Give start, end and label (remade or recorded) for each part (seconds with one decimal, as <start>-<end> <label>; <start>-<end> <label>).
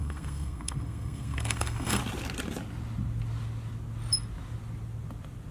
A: 0.0-2.0 remade; 2.0-5.5 recorded